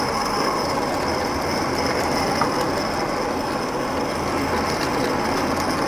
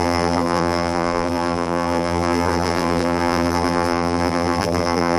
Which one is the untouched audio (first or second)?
first